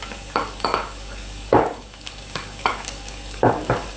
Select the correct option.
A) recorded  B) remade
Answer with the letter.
B